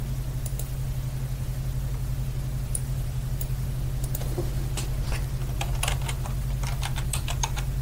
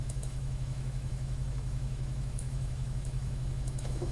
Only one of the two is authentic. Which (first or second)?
first